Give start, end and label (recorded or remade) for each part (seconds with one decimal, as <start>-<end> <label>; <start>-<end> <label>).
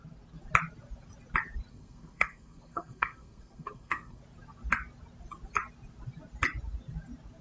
0.0-1.7 recorded; 1.7-4.2 remade; 4.2-7.4 recorded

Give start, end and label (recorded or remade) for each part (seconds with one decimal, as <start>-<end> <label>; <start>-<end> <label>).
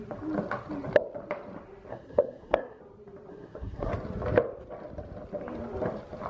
0.0-1.9 recorded; 1.9-2.8 remade; 2.8-3.3 recorded; 3.3-3.9 remade; 3.9-6.3 recorded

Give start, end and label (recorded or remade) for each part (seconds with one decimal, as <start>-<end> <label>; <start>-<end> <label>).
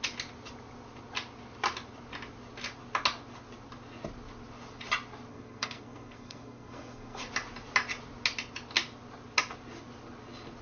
0.0-5.3 recorded; 5.3-7.3 remade; 7.3-10.6 recorded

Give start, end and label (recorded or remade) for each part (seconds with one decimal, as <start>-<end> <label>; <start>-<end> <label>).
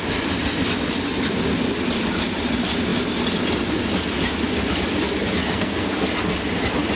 0.0-5.4 recorded; 5.4-6.1 remade; 6.1-7.0 recorded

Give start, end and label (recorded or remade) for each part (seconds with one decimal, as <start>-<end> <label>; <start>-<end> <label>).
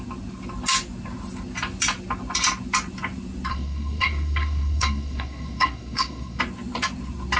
0.0-3.5 recorded; 3.5-6.4 remade; 6.4-7.4 recorded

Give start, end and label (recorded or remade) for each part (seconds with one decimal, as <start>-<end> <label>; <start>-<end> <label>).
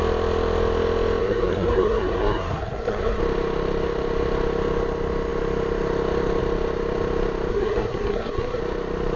0.0-1.2 recorded; 1.2-3.2 remade; 3.2-7.5 recorded; 7.5-8.6 remade; 8.6-9.2 recorded